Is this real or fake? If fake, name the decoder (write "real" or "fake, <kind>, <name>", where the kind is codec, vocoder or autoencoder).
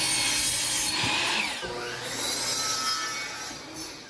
real